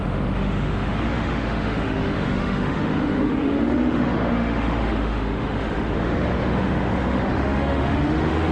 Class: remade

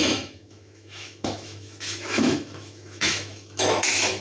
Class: remade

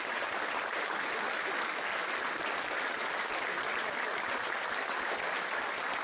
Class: recorded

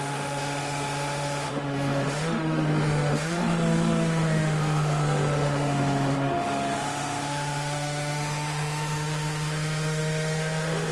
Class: remade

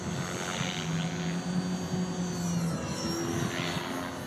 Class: recorded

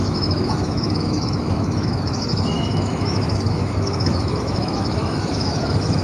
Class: remade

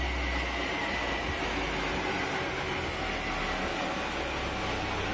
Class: recorded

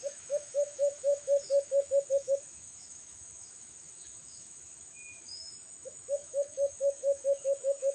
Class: remade